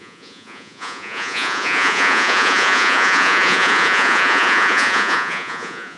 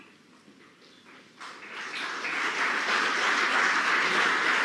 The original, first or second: second